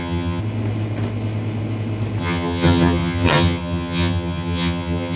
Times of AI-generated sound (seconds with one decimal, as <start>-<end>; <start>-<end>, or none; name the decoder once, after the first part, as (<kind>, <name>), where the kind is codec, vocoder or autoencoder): 0.0-0.4 (vocoder, HiFi-GAN); 2.2-5.2